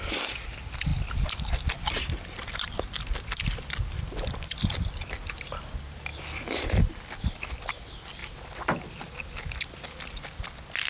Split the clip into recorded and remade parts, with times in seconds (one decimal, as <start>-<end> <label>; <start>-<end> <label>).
0.0-0.9 recorded; 0.9-3.4 remade; 3.4-8.2 recorded; 8.2-8.8 remade; 8.8-10.9 recorded